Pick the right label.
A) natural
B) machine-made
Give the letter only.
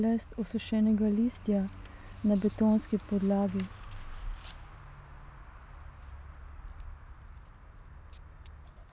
A